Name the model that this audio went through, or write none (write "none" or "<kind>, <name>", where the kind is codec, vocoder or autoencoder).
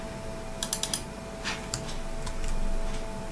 none